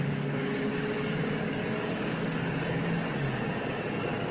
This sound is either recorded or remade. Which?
remade